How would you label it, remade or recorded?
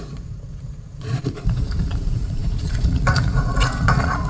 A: remade